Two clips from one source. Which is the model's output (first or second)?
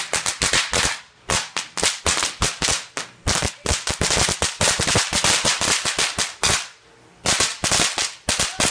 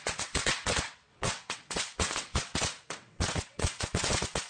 second